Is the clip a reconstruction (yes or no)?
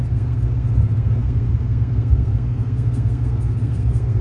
yes